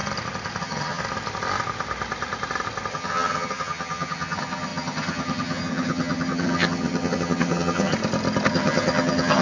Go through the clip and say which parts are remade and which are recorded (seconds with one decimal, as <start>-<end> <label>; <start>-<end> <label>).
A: 0.0-0.6 recorded; 0.6-1.0 remade; 1.0-2.9 recorded; 2.9-7.9 remade; 7.9-8.5 recorded; 8.5-9.4 remade